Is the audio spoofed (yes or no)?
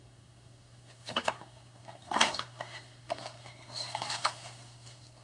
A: yes